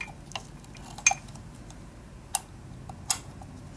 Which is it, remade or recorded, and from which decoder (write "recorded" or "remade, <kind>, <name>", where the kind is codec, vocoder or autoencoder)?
recorded